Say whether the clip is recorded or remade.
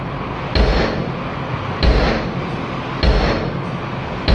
recorded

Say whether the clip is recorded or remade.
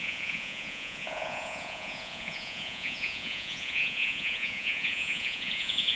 remade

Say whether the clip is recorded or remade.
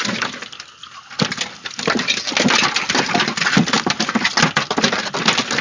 recorded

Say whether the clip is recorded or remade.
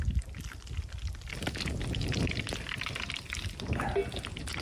recorded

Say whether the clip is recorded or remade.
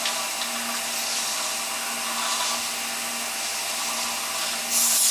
recorded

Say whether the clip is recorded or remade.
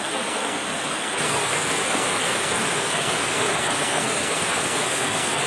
remade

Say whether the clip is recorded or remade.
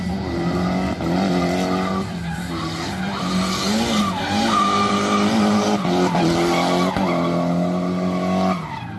recorded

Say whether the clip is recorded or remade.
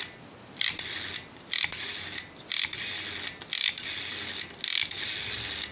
recorded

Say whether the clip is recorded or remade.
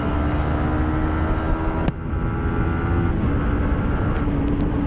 recorded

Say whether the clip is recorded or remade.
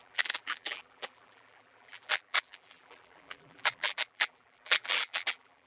remade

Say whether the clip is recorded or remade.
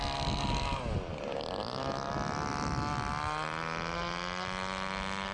recorded